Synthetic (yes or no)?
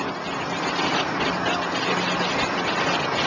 no